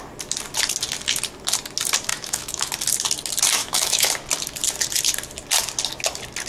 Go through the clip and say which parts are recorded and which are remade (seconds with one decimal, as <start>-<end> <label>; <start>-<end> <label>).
0.0-2.1 recorded; 2.1-2.7 remade; 2.7-3.6 recorded; 3.6-4.1 remade; 4.1-6.5 recorded